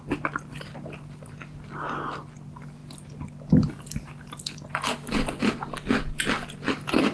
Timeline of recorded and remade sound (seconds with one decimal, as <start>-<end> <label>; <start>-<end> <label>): 0.0-7.1 recorded